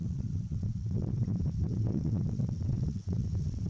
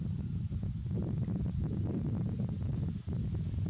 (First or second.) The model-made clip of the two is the first